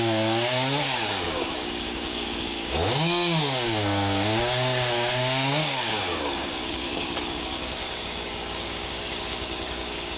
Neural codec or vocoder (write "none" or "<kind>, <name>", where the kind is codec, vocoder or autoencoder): codec, DAC